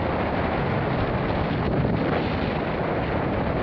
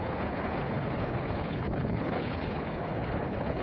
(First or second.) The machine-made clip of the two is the second